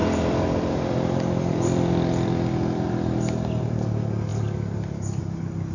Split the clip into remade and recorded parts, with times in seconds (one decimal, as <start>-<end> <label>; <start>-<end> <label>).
0.0-3.4 remade; 3.4-4.3 recorded; 4.3-5.2 remade; 5.2-5.7 recorded